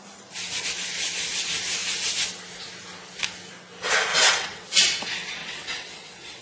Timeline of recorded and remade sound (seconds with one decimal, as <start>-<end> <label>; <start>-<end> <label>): 0.0-4.1 recorded; 4.1-4.7 remade; 4.7-5.4 recorded; 5.4-6.4 remade